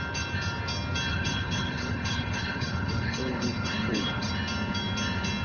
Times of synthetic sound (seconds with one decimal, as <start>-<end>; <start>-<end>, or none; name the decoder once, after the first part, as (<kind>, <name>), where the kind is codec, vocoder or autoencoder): 1.1-4.3 (codec, HILCodec)